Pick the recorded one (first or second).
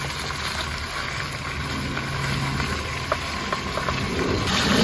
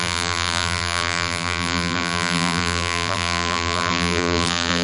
first